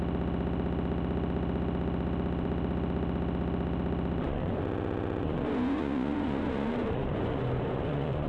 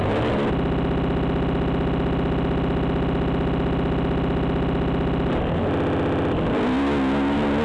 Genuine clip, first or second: second